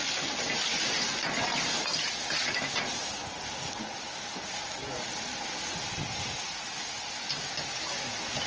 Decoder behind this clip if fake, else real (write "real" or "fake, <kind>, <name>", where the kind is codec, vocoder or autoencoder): real